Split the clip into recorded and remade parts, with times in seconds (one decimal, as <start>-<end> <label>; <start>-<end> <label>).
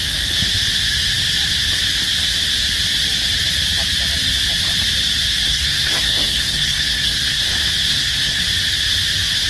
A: 0.0-5.5 recorded; 5.5-7.4 remade; 7.4-7.9 recorded; 7.9-8.4 remade; 8.4-9.5 recorded